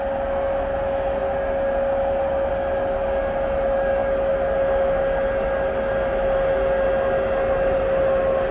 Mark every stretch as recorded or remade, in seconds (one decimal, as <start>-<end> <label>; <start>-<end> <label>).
0.0-8.5 recorded